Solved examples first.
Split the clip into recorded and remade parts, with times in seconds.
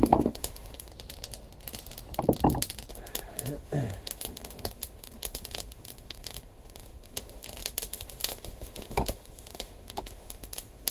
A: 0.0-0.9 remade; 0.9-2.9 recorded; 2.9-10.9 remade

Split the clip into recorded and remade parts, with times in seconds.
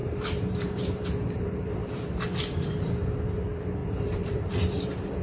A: 0.0-5.2 remade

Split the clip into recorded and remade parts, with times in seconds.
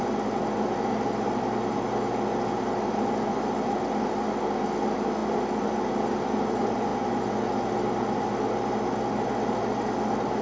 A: 0.0-10.4 recorded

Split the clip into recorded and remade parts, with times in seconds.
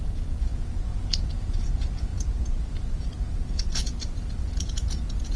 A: 0.0-5.4 remade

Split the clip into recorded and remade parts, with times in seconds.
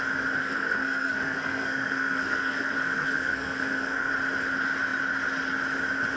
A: 0.0-0.4 recorded; 0.4-4.1 remade; 4.1-6.2 recorded